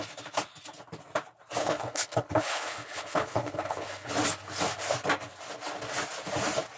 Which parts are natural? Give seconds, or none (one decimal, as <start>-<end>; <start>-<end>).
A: 0.0-1.6; 4.1-6.8